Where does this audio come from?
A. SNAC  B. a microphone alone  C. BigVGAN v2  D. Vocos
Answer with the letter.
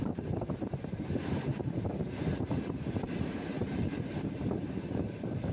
C